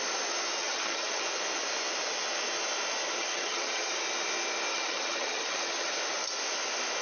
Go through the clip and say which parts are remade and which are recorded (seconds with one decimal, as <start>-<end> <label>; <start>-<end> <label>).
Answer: 0.0-0.6 recorded; 0.6-1.2 remade; 1.2-3.2 recorded; 3.2-3.9 remade; 3.9-4.7 recorded; 4.7-5.9 remade; 5.9-7.0 recorded